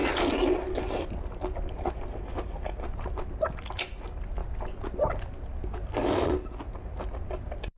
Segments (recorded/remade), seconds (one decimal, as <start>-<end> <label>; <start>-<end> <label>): 0.0-7.8 recorded

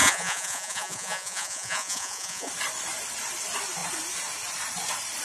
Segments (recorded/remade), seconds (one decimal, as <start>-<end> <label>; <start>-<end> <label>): 0.0-2.5 remade; 2.5-5.2 recorded